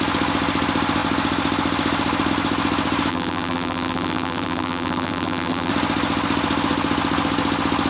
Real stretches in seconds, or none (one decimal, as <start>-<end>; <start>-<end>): 0.0-3.1; 5.7-7.9